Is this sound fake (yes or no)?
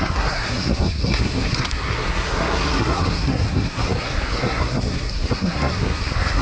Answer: yes